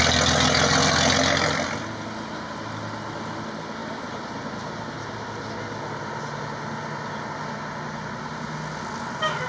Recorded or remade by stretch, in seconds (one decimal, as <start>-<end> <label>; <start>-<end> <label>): 0.0-9.5 recorded